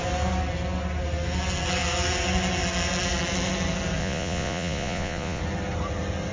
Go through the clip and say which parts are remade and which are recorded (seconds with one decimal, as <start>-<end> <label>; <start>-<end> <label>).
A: 0.0-4.0 recorded; 4.0-5.4 remade; 5.4-6.3 recorded